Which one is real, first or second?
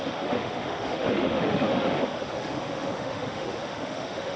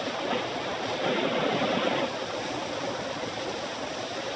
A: second